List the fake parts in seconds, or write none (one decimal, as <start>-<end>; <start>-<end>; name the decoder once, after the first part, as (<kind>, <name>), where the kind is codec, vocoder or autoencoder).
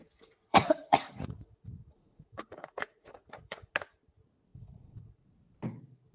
0.5-3.7 (vocoder, Vocos); 4.5-5.3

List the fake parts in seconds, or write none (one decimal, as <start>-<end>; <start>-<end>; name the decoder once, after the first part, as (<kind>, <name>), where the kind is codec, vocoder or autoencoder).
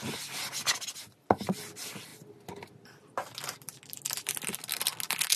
none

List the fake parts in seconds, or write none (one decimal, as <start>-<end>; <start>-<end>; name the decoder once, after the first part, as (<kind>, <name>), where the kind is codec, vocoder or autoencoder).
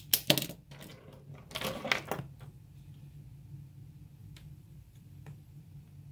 4.2-5.6 (vocoder, BigVGAN v2)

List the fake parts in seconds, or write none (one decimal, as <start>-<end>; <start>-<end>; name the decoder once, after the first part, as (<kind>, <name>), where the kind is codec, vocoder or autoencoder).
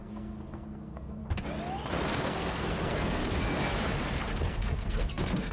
0.0-1.2 (codec, SNAC); 2.1-3.2; 4.4-5.5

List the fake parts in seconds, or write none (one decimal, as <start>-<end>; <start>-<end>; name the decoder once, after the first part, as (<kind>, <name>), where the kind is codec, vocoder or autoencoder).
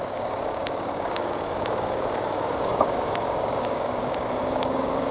0.0-5.1 (codec, DAC)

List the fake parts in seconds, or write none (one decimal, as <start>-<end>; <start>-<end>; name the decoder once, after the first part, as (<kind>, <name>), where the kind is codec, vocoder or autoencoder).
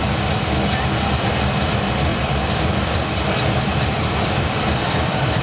2.1-5.4 (vocoder, BigVGAN v2)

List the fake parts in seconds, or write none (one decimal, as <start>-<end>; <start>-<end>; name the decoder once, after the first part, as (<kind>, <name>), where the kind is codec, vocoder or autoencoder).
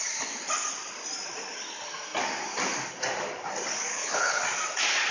3.9-4.4 (codec, HILCodec)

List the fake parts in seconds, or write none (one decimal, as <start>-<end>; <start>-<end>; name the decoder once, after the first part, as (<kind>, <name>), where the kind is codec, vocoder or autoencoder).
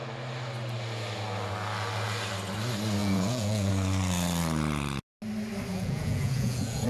3.0-3.7 (vocoder, Vocos); 5.7-6.9